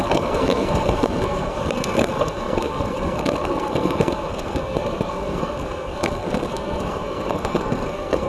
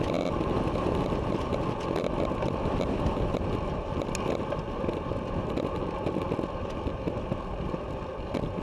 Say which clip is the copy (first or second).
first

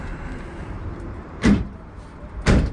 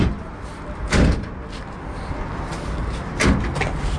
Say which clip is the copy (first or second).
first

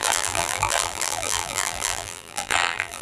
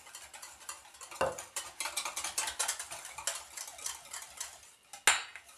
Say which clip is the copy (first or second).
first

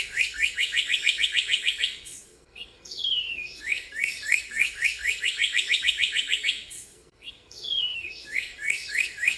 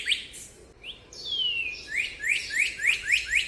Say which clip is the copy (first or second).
first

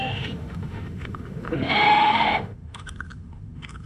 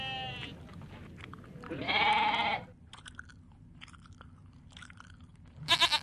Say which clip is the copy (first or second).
first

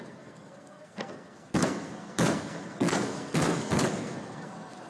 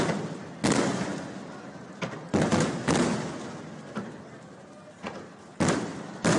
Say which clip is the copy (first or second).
first